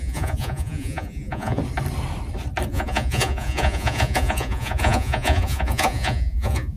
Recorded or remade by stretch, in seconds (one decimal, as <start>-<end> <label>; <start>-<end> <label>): 0.0-1.6 remade; 1.6-2.7 recorded; 2.7-6.8 remade